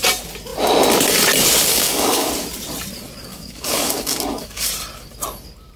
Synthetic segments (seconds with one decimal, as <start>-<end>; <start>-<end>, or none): 1.7-2.3; 3.3-4.7